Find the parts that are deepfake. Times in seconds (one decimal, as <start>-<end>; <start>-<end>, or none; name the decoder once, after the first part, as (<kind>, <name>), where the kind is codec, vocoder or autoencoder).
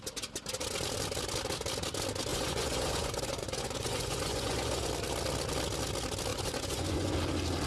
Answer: 2.3-4.9 (vocoder, Vocos); 6.3-7.1